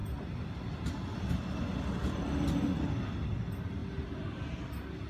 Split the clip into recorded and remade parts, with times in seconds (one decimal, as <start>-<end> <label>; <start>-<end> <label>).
0.0-5.1 recorded